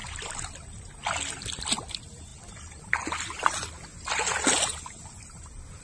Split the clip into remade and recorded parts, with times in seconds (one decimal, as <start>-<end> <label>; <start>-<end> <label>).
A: 0.0-5.8 recorded